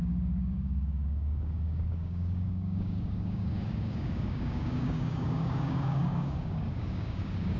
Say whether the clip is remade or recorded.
remade